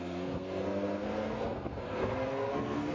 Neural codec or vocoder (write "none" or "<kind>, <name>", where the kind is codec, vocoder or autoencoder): codec, SNAC